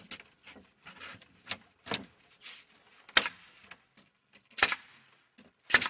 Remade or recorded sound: recorded